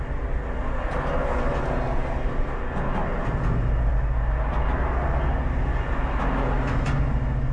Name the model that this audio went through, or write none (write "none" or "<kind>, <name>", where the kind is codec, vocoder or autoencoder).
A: none